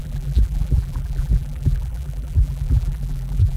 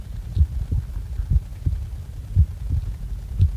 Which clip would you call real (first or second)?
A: second